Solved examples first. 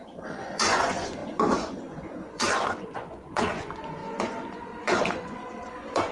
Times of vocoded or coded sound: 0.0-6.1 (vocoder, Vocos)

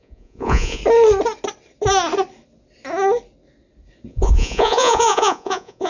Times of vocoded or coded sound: 0.0-0.8 (vocoder, Vocos); 4.1-5.9

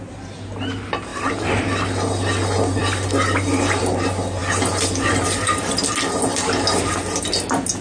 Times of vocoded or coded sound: none

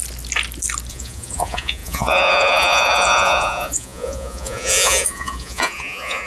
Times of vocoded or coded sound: 0.9-6.3 (vocoder, Vocos)